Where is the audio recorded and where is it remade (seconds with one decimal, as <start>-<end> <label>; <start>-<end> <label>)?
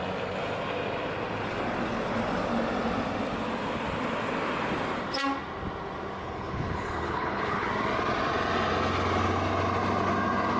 0.0-6.2 recorded; 6.2-7.7 remade; 7.7-10.6 recorded